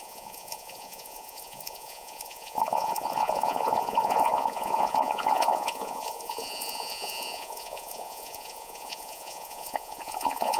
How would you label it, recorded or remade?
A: remade